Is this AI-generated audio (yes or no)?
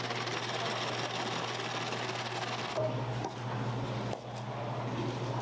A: no